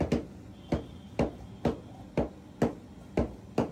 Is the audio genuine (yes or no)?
yes